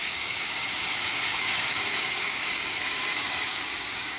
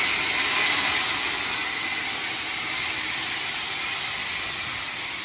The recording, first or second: second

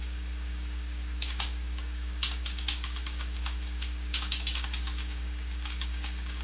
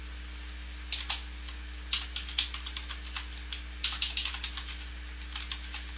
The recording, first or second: second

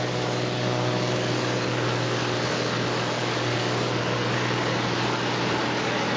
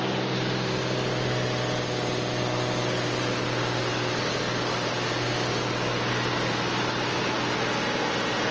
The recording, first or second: second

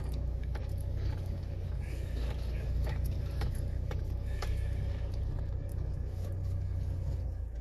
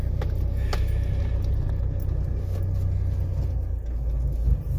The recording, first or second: second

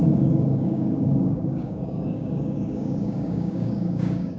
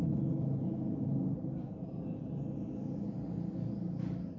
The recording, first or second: second